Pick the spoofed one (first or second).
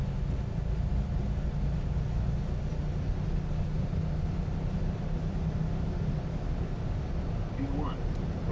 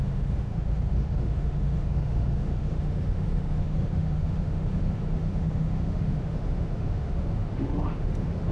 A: second